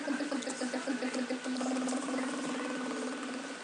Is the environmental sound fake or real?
real